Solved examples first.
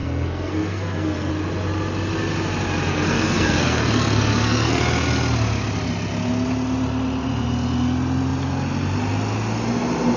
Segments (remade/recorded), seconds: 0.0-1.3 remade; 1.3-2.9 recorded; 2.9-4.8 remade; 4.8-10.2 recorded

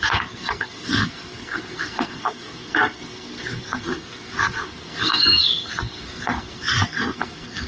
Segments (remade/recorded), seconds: 0.0-7.7 remade

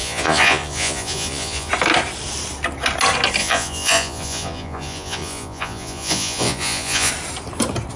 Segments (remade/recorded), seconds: 0.0-1.7 remade; 1.7-3.4 recorded; 3.4-7.1 remade; 7.1-8.0 recorded